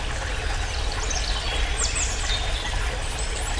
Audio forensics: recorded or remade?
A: recorded